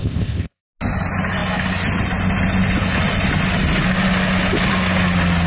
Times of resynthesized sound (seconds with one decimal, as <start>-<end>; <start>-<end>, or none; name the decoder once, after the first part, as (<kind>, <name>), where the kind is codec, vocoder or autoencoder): 0.0-0.6 (codec, ZipCodec)